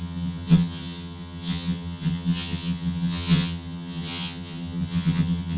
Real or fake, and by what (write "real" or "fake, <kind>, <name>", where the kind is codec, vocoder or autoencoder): fake, vocoder, HiFi-GAN